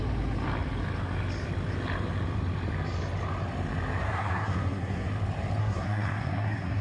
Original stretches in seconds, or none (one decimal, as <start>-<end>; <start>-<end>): 0.0-4.0; 5.1-5.6